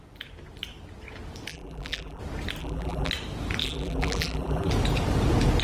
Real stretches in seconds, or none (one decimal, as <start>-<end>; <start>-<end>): 0.0-1.5; 2.2-2.6; 3.1-3.6; 4.7-5.6